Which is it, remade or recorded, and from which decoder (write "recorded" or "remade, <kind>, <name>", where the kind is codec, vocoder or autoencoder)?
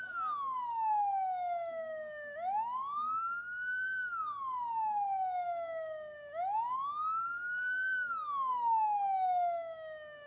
recorded